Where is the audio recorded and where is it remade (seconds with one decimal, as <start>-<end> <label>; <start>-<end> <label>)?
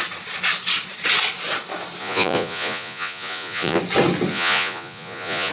0.0-2.0 recorded; 2.0-3.8 remade; 3.8-4.3 recorded; 4.3-5.5 remade